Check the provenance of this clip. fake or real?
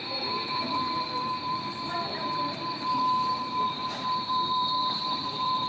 fake